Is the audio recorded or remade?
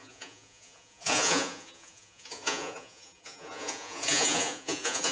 remade